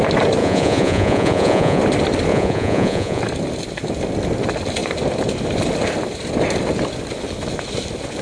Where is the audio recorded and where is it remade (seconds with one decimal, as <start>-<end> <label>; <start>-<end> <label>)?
0.0-0.4 recorded; 0.4-1.8 remade; 1.8-2.3 recorded; 2.3-3.2 remade; 3.2-8.2 recorded